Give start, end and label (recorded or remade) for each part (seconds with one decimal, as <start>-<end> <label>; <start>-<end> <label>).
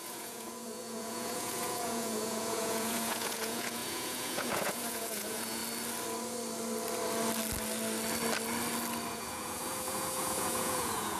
0.0-5.6 remade; 5.6-9.1 recorded; 9.1-11.2 remade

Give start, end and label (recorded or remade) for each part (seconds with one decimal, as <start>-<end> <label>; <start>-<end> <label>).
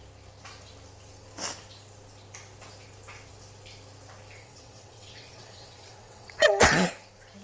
0.0-4.4 recorded; 4.4-6.9 remade; 6.9-7.4 recorded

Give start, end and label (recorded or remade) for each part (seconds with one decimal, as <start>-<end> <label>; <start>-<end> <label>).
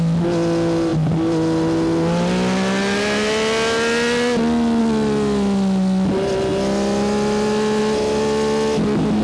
0.0-9.2 recorded